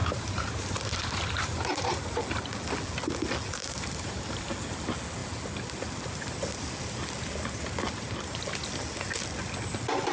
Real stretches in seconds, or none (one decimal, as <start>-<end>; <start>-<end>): 2.2-3.6; 4.5-10.1